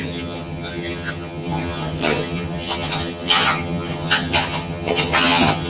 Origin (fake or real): fake